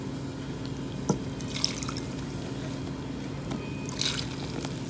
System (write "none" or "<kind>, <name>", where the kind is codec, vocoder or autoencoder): none